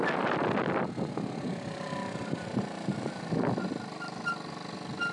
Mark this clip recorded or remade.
recorded